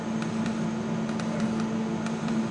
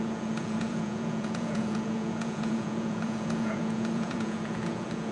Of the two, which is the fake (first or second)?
second